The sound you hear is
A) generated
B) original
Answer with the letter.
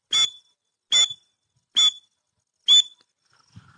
B